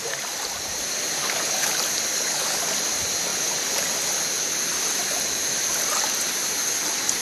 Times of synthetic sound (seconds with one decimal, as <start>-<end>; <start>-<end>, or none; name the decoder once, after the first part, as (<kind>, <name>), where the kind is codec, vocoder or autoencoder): 1.2-1.7 (codec, DAC); 2.1-2.8